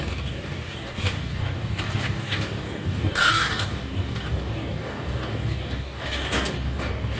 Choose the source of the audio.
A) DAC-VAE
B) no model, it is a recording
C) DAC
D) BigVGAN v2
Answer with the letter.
C